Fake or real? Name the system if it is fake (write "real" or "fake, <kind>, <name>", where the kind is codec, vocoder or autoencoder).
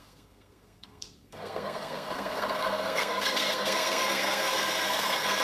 fake, codec, SNAC